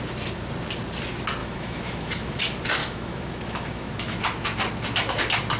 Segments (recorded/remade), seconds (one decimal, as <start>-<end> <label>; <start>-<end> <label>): 0.0-1.4 recorded; 1.4-2.4 remade; 2.4-2.8 recorded; 2.8-4.2 remade; 4.2-5.6 recorded